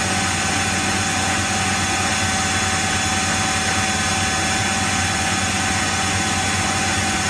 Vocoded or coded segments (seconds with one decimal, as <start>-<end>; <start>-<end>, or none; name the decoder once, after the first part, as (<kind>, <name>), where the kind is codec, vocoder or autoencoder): 0.0-2.1 (vocoder, Vocos); 4.6-7.3